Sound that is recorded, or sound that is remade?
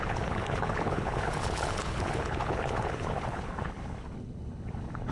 remade